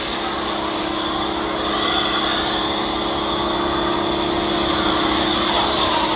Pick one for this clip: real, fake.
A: real